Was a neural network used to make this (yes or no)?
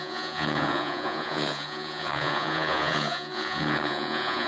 yes